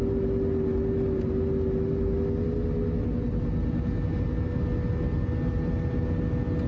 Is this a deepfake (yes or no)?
no